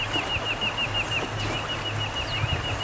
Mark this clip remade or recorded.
recorded